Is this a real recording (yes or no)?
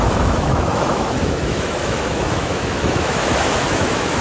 no